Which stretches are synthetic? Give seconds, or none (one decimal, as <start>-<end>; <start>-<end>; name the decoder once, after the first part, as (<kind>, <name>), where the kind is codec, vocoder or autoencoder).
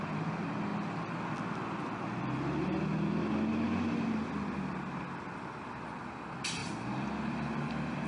none